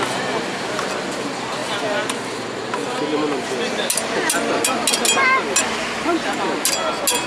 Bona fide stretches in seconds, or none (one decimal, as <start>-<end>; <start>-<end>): 0.0-7.3

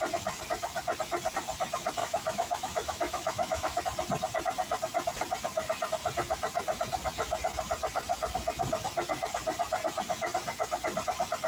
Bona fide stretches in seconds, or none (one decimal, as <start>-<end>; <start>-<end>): 0.0-2.0; 3.8-11.5

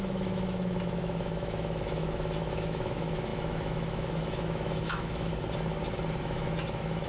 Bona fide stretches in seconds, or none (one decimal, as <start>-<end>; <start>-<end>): 5.3-6.2